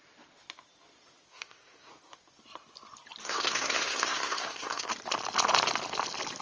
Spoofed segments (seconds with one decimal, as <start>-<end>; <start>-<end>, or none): 1.3-1.9; 3.2-4.9